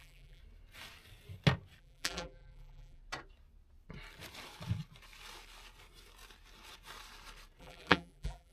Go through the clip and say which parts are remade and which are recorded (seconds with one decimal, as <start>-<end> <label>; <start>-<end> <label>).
0.0-0.4 remade; 0.4-1.8 recorded; 1.8-3.0 remade; 3.0-7.6 recorded; 7.6-8.5 remade